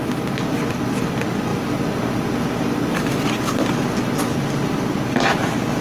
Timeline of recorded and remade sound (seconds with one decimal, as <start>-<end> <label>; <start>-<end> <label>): 0.0-1.5 recorded; 1.5-4.2 remade; 4.2-5.8 recorded